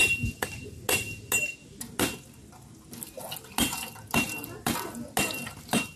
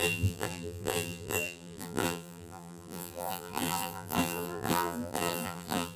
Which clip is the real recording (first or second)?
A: first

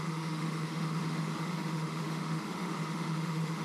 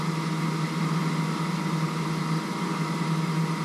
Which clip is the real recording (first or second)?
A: second